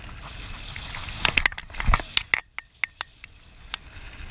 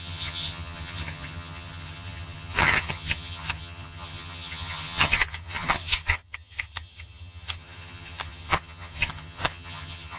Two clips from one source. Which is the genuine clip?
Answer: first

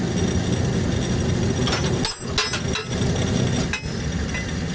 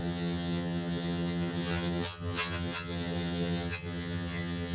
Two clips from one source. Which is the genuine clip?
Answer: first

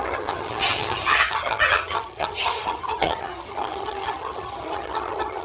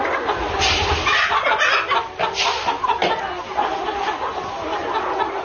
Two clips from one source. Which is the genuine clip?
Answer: second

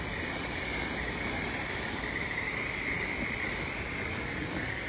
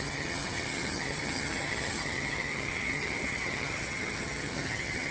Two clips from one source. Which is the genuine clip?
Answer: first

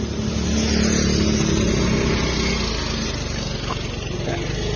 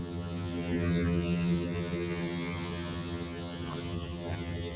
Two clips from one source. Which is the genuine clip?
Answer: first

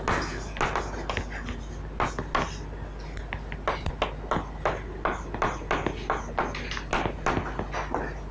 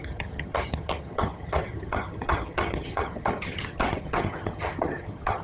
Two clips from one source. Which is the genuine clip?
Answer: first